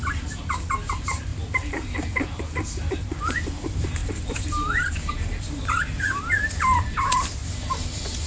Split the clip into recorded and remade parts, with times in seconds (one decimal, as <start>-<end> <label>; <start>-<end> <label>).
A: 0.0-4.0 recorded; 4.0-7.0 remade; 7.0-8.3 recorded